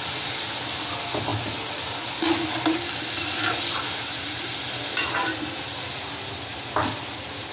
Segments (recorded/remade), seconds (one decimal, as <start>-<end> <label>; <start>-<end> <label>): 0.0-6.5 recorded; 6.5-7.0 remade; 7.0-7.5 recorded